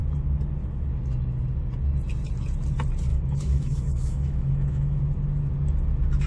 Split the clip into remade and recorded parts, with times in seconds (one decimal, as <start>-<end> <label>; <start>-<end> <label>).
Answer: 0.0-3.1 recorded; 3.1-5.0 remade; 5.0-6.3 recorded